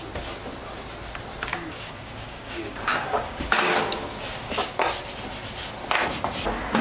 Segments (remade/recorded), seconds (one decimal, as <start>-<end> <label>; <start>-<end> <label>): 0.0-1.5 recorded; 1.5-4.5 remade; 4.5-6.8 recorded